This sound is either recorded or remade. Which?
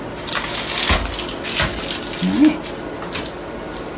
recorded